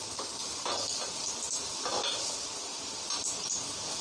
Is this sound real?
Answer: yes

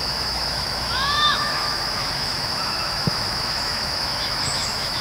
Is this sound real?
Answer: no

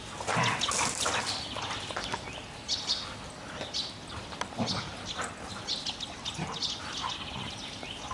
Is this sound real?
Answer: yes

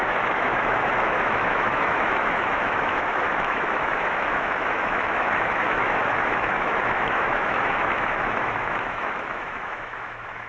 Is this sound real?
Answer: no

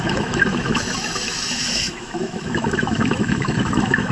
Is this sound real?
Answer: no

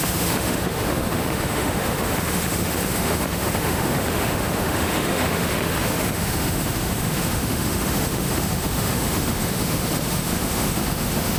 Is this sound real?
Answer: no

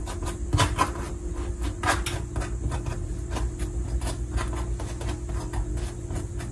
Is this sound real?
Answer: yes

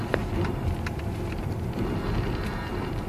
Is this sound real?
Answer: yes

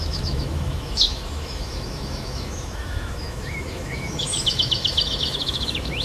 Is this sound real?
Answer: no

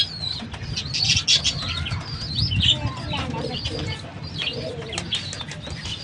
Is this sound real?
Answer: yes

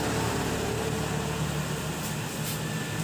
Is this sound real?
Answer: yes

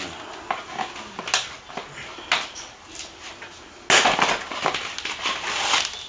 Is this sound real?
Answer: yes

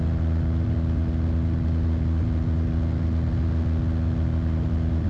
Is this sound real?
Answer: yes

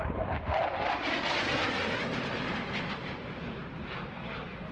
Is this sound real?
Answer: yes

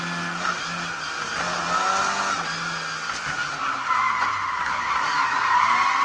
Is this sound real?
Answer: yes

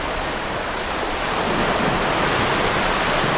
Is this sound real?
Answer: yes